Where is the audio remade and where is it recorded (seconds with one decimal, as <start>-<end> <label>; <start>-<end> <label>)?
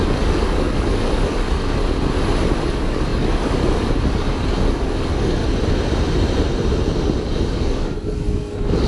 0.0-1.8 remade; 1.8-2.7 recorded; 2.7-5.4 remade; 5.4-7.2 recorded; 7.2-8.9 remade